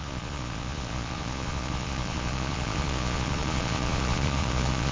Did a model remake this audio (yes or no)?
yes